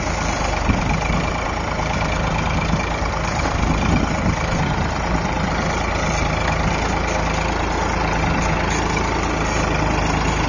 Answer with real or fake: real